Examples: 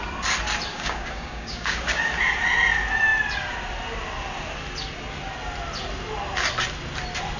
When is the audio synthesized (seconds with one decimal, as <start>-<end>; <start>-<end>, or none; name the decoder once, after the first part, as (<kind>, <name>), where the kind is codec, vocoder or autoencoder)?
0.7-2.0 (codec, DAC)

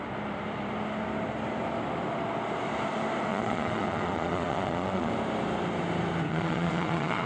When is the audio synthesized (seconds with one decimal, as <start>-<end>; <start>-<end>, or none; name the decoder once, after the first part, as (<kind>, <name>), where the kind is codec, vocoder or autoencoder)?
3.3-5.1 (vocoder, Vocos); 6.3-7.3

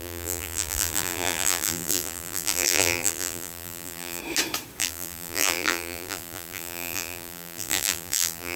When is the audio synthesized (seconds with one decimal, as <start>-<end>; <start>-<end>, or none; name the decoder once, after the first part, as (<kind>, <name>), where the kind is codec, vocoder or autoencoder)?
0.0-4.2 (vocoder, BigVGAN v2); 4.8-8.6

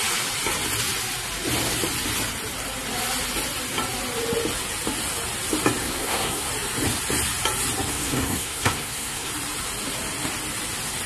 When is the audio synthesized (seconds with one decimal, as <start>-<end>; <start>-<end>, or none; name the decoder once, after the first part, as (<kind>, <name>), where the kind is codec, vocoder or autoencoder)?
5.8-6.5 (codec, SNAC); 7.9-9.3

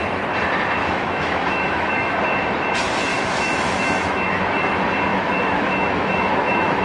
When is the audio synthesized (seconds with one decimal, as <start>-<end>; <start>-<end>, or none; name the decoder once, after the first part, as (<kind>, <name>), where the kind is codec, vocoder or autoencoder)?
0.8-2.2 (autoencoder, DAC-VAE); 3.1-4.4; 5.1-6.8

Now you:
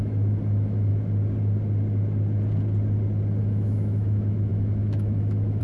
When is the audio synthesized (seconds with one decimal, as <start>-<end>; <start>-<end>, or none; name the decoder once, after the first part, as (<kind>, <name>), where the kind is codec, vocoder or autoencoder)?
0.0-0.9 (autoencoder, DAC-VAE); 3.4-5.6